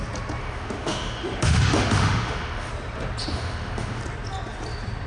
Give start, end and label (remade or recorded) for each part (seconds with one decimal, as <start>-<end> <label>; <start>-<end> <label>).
0.0-0.4 recorded; 0.4-2.7 remade; 2.7-3.2 recorded; 3.2-4.0 remade; 4.0-5.1 recorded